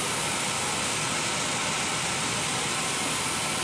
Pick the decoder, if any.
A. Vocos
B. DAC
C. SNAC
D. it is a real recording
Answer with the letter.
D